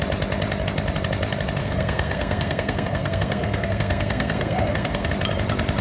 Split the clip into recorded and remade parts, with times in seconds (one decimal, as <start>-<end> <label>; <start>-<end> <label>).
0.0-1.6 recorded; 1.6-5.1 remade; 5.1-5.8 recorded